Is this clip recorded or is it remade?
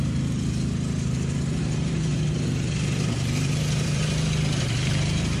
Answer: remade